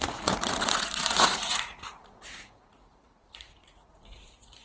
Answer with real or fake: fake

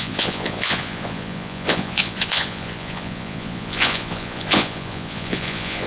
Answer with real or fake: fake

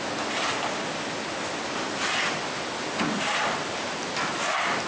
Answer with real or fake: real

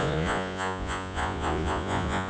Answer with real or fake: fake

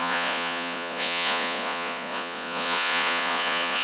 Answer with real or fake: fake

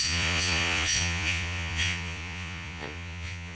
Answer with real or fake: fake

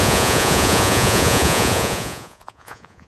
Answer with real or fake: fake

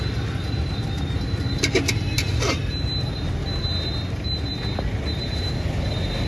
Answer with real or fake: real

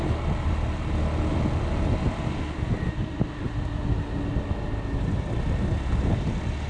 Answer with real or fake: real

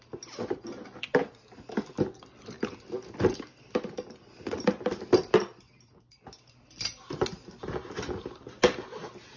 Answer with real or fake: real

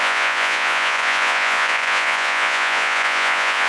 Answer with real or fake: fake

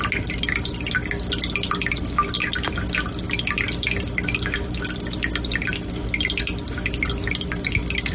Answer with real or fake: real